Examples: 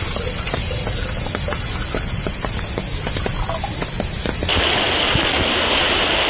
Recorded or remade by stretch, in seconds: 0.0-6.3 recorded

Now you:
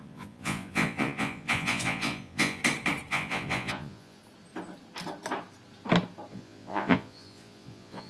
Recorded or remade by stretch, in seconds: 0.0-2.6 remade; 2.6-3.1 recorded; 3.1-4.2 remade; 4.2-6.3 recorded; 6.3-8.1 remade

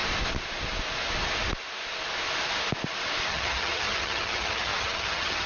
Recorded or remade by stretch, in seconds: 0.0-3.3 recorded; 3.3-5.5 remade